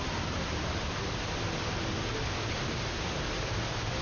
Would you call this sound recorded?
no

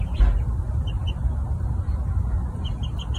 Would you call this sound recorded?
yes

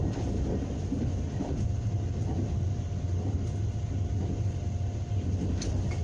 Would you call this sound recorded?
yes